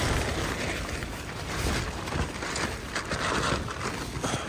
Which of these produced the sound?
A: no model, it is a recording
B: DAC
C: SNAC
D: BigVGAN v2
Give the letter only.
A